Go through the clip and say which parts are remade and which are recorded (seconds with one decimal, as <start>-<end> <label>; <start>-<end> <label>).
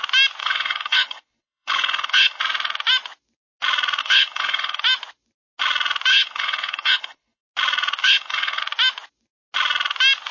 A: 0.0-0.4 recorded; 0.4-2.4 remade; 2.4-4.0 recorded; 4.0-4.8 remade; 4.8-6.1 recorded; 6.1-7.4 remade; 7.4-8.0 recorded; 8.0-8.6 remade; 8.6-10.3 recorded